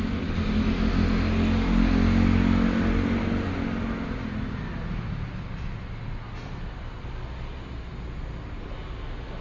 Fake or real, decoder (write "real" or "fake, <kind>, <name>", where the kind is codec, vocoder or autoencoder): real